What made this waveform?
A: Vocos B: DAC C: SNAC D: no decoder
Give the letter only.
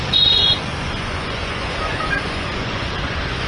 A